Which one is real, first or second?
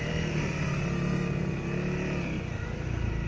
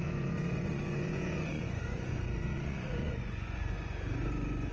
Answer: first